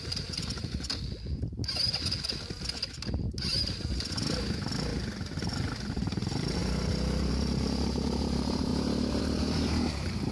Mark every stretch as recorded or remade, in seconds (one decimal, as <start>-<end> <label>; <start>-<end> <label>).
0.0-0.9 remade; 0.9-3.4 recorded; 3.4-4.9 remade; 4.9-5.9 recorded; 5.9-6.6 remade; 6.6-7.3 recorded; 7.3-10.3 remade